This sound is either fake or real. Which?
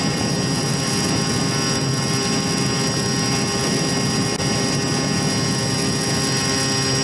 real